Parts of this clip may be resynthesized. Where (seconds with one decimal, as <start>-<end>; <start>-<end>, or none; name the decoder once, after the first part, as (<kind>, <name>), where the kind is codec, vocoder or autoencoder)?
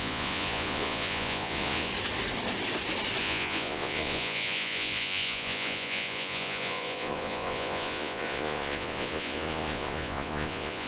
0.0-1.9 (vocoder, Vocos); 3.2-10.9